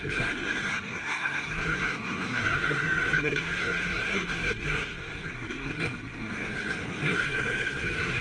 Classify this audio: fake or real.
fake